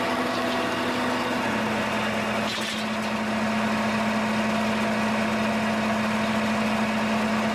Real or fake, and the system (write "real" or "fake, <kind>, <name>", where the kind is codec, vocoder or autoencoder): real